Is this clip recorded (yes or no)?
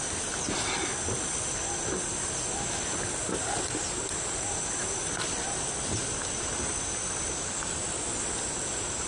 yes